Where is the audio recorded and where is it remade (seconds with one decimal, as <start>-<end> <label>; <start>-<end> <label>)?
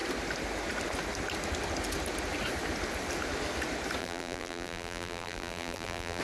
0.0-4.0 recorded; 4.0-6.2 remade